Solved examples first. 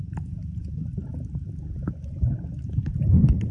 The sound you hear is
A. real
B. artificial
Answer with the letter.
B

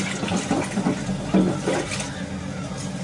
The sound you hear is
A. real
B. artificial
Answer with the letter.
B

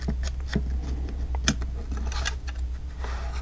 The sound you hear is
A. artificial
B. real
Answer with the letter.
B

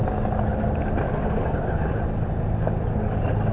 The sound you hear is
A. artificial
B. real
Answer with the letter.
B